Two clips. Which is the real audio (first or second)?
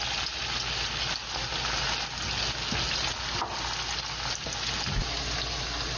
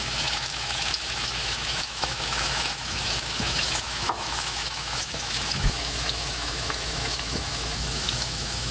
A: first